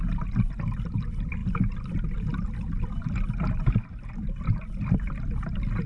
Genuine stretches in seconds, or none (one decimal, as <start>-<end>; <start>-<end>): 0.0-5.9